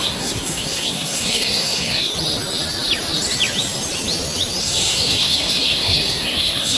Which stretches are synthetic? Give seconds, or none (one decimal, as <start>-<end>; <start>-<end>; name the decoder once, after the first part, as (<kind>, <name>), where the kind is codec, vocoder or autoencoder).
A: 0.0-2.1 (codec, SNAC); 4.6-6.8